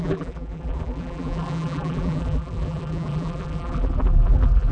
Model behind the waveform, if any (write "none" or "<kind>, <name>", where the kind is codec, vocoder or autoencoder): vocoder, BigVGAN v2